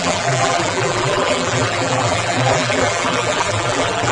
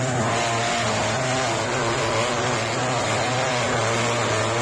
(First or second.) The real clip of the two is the second